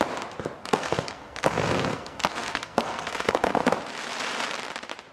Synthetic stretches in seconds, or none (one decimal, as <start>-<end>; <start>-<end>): 0.6-3.7